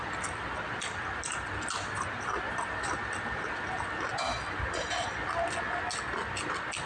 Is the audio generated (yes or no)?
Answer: no